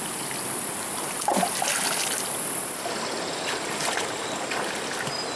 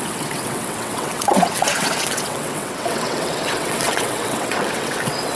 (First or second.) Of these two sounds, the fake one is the second